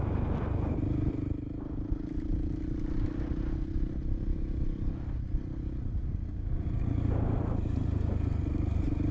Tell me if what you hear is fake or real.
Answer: real